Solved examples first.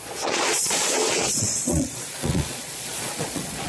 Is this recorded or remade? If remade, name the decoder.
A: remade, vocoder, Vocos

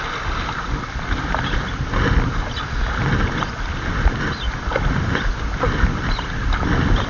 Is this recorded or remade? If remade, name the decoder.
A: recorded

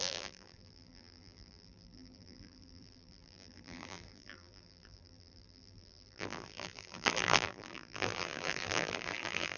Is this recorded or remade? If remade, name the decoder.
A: remade, vocoder, BigVGAN v2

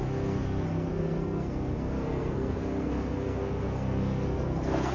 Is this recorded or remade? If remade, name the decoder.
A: remade, codec, SNAC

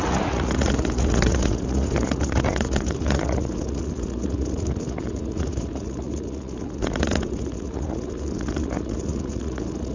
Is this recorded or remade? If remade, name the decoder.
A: remade, vocoder, Vocos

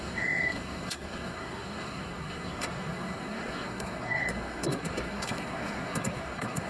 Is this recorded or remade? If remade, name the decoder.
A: remade, codec, SNAC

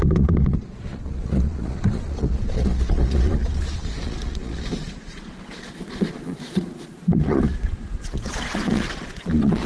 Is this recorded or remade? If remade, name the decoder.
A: remade, vocoder, Vocos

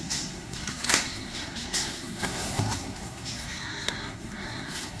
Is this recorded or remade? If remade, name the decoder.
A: remade, codec, SNAC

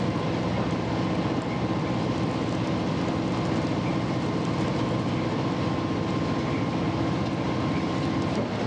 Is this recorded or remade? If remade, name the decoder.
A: recorded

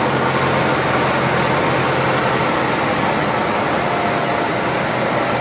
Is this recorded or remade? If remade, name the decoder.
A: recorded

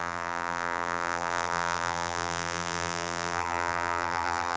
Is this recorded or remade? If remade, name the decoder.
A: remade, vocoder, BigVGAN v2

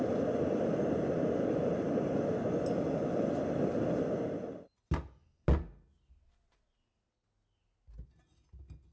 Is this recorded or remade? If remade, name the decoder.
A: recorded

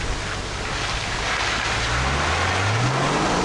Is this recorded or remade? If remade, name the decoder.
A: recorded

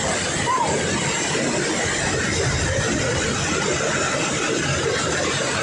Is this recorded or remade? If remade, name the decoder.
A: recorded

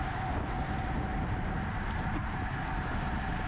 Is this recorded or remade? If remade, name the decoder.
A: recorded